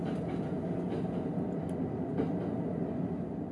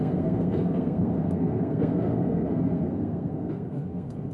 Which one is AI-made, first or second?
second